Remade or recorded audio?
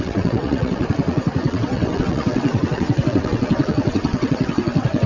remade